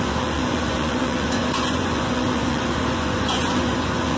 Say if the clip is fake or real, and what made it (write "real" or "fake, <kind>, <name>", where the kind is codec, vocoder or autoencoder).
fake, vocoder, Vocos